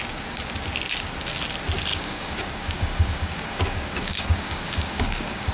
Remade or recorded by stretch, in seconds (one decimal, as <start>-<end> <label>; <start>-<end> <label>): 0.0-1.9 recorded; 1.9-5.5 remade